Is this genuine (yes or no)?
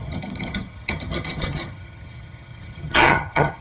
no